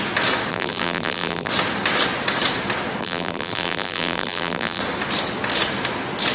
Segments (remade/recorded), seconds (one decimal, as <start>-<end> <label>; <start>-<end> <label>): 0.0-0.5 recorded; 0.5-1.5 remade; 1.5-3.0 recorded; 3.0-4.8 remade; 4.8-6.3 recorded